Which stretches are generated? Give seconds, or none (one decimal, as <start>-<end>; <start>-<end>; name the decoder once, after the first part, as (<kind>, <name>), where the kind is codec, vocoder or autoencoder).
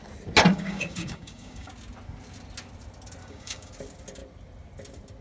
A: 0.5-1.7 (codec, DAC); 3.2-3.7